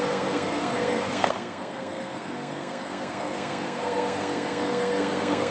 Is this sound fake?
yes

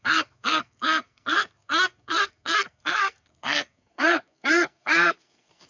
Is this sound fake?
yes